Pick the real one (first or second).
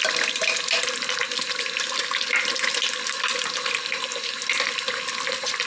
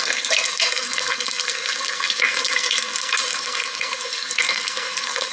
first